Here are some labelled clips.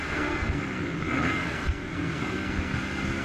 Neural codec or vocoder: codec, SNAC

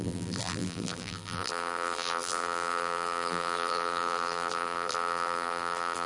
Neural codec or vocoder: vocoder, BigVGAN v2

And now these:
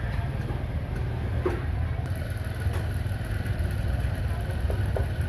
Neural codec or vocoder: none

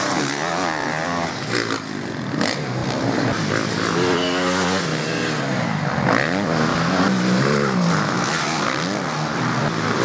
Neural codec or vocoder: none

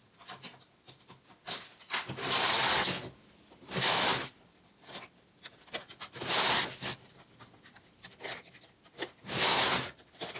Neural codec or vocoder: none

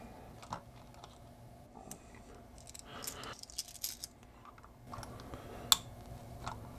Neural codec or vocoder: none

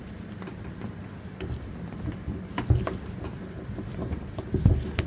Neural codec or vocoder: none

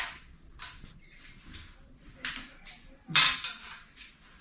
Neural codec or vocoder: none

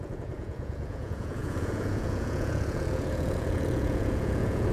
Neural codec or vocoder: vocoder, Vocos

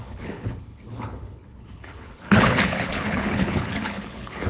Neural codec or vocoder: codec, HILCodec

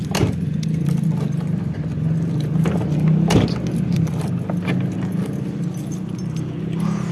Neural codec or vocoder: none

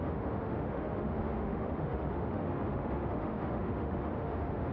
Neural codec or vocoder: autoencoder, DAC-VAE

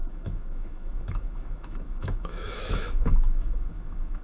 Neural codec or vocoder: autoencoder, DAC-VAE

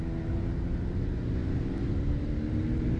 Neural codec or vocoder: none